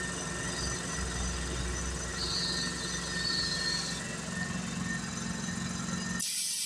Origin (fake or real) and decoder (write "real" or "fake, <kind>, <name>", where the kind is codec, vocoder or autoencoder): real